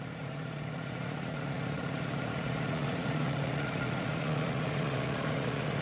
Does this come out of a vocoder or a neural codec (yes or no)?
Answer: yes